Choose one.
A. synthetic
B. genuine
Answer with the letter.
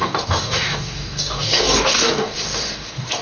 A